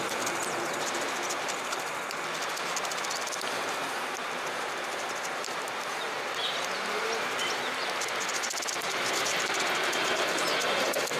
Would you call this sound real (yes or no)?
yes